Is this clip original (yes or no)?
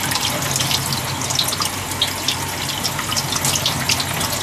yes